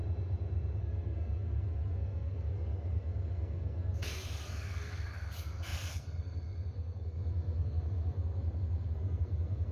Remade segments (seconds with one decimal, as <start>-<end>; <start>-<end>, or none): 0.8-9.7